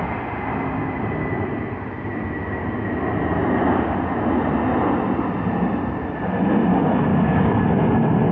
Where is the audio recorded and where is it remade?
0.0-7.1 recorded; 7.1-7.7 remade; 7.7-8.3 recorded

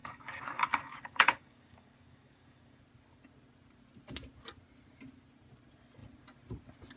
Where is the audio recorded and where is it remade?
0.0-2.8 remade; 2.8-7.0 recorded

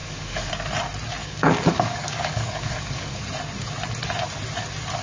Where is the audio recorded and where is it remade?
0.0-0.5 remade; 0.5-1.2 recorded; 1.2-3.2 remade; 3.2-5.0 recorded

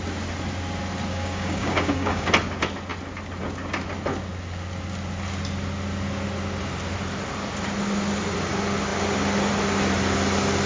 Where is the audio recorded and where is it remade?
0.0-1.1 recorded; 1.1-2.3 remade; 2.3-10.7 recorded